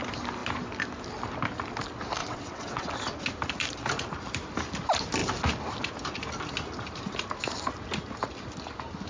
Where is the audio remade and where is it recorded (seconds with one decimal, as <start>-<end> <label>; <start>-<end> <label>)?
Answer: 0.0-2.2 recorded; 2.2-2.9 remade; 2.9-9.1 recorded

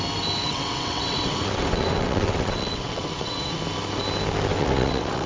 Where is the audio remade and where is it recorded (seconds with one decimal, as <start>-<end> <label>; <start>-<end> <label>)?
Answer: 0.0-0.4 recorded; 0.4-3.6 remade; 3.6-4.5 recorded; 4.5-5.3 remade

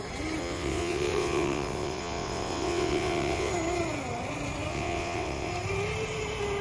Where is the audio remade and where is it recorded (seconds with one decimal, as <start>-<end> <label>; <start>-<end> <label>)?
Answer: 0.0-0.4 recorded; 0.4-3.5 remade; 3.5-4.7 recorded; 4.7-5.5 remade; 5.5-6.6 recorded